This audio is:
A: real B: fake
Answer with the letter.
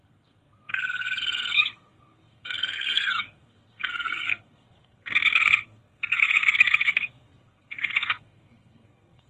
B